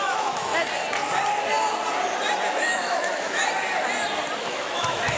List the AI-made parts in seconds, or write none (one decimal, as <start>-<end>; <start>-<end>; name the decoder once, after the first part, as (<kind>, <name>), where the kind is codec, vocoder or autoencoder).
0.0-0.5 (autoencoder, DAC-VAE); 2.5-3.4; 4.4-5.2